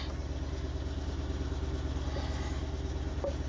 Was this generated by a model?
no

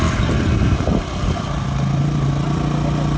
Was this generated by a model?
no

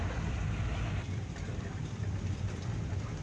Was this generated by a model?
yes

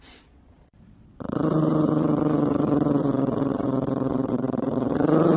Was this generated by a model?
yes